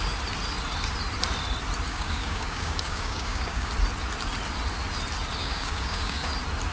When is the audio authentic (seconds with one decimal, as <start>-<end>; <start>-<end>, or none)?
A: 0.0-1.9; 3.7-5.4; 6.3-6.7